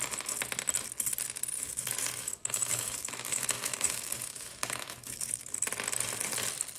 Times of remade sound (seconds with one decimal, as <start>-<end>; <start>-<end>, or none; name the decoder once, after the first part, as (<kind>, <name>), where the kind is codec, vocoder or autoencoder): 1.5-5.6 (autoencoder, DAC-VAE)